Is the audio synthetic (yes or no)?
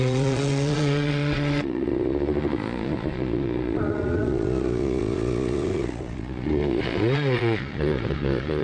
yes